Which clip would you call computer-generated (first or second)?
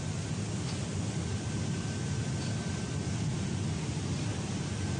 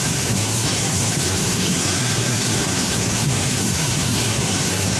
second